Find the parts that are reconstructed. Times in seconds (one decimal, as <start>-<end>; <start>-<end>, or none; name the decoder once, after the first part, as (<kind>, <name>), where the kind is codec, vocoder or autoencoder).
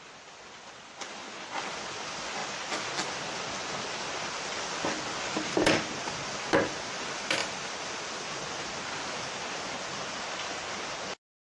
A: none